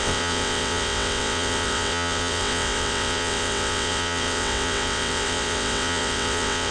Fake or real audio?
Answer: fake